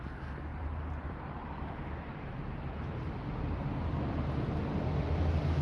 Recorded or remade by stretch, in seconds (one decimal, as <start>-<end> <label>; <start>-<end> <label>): 0.0-0.5 recorded; 0.5-3.9 remade; 3.9-5.6 recorded